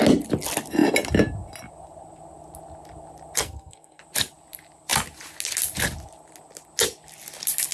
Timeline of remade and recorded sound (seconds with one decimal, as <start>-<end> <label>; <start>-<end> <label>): 0.0-3.4 recorded; 3.4-4.0 remade; 4.0-7.7 recorded